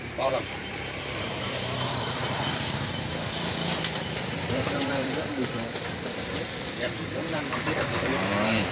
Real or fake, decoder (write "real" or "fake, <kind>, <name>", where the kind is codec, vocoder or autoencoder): fake, vocoder, BigVGAN v2